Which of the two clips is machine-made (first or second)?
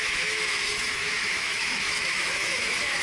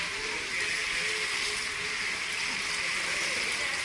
first